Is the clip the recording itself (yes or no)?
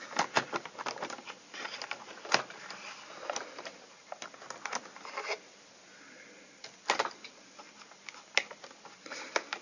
yes